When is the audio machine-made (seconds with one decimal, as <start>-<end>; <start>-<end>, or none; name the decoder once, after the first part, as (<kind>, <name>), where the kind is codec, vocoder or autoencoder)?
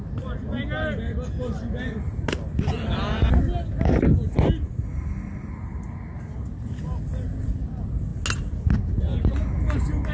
none